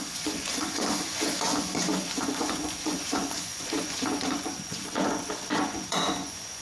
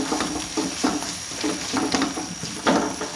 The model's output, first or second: first